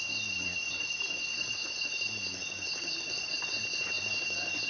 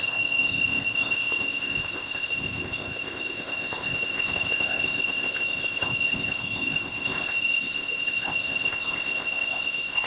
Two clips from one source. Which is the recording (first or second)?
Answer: first